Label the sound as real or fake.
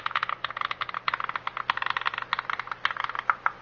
real